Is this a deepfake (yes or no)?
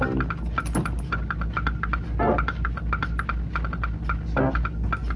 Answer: no